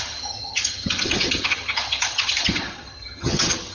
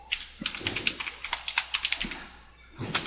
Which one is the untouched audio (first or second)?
second